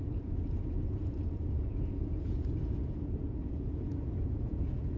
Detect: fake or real fake